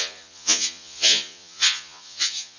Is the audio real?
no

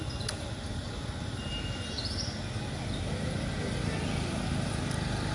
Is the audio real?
yes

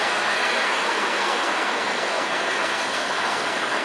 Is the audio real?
no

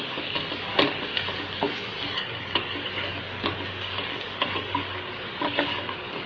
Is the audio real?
no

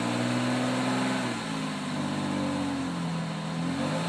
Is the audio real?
yes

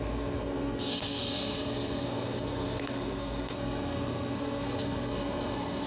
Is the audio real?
no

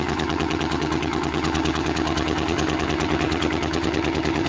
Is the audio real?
no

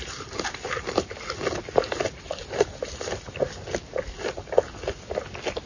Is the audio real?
yes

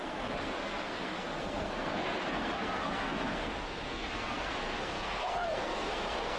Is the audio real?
no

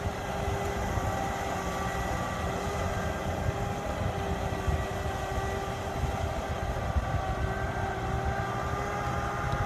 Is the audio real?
yes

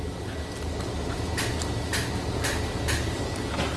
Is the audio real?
yes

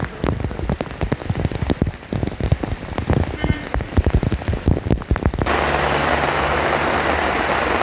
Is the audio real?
yes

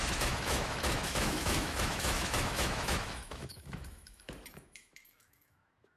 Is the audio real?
no